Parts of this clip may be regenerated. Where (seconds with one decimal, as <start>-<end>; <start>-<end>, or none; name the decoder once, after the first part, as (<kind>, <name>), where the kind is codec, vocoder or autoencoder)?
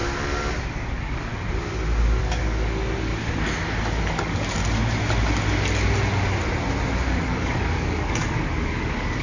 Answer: 0.6-1.3 (codec, DAC); 2.2-3.1; 3.8-4.6; 7.2-9.2